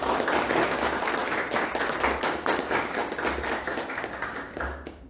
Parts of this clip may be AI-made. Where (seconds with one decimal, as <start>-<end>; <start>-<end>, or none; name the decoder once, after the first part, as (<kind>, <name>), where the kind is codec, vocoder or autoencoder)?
0.0-1.2 (codec, DAC); 2.2-3.2; 3.9-5.1